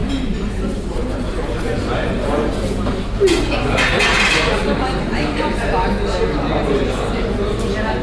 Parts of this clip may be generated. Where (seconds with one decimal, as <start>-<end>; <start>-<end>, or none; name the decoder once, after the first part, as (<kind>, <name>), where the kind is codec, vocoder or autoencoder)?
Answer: 0.0-2.9 (vocoder, BigVGAN v2); 4.1-5.6